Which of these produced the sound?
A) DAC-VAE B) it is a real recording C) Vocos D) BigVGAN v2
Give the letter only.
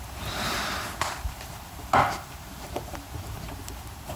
D